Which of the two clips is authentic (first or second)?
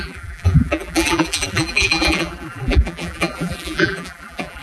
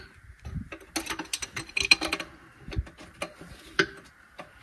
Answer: second